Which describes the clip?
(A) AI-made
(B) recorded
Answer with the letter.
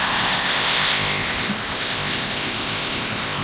A